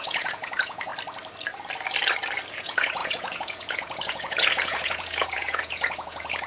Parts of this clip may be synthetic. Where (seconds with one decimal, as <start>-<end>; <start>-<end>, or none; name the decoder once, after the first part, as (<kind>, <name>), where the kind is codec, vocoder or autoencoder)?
0.0-0.9 (vocoder, Vocos); 2.5-6.5